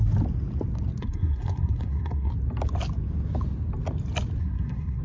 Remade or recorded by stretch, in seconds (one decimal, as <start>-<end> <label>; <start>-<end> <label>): 0.0-1.0 recorded; 1.0-2.3 remade; 2.3-4.4 recorded; 4.4-5.0 remade